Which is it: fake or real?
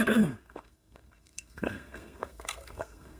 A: fake